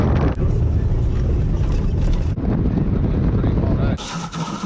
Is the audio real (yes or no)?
yes